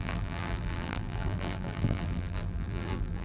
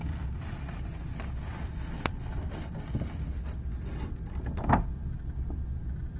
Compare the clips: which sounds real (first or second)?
second